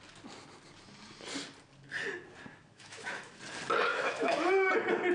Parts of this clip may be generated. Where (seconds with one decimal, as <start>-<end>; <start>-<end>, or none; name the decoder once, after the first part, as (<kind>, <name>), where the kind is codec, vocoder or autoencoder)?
2.5-3.4 (autoencoder, DAC-VAE); 3.9-4.5